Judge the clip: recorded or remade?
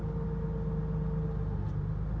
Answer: recorded